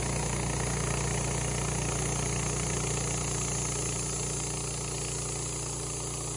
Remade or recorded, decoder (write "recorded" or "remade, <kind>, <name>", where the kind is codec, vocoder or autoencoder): recorded